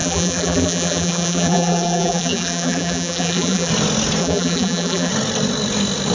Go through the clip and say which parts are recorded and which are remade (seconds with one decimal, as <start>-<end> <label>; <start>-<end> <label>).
0.0-3.7 remade; 3.7-4.2 recorded; 4.2-5.1 remade; 5.1-6.1 recorded